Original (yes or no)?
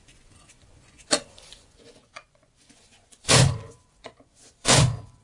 no